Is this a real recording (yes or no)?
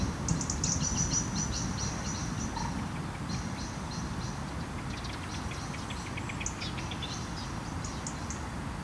yes